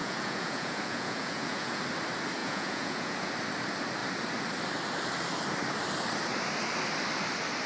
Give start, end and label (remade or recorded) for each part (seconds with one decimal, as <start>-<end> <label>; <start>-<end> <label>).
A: 0.0-1.8 remade; 1.8-2.4 recorded; 2.4-3.3 remade; 3.3-7.7 recorded